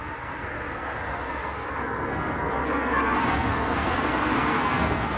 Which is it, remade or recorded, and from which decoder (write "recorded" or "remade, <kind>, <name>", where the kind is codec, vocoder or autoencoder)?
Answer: remade, codec, SNAC